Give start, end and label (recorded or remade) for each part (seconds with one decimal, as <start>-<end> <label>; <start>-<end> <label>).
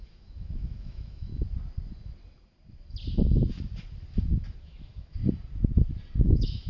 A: 0.0-1.3 remade; 1.3-4.6 recorded; 4.6-5.2 remade; 5.2-6.2 recorded; 6.2-6.7 remade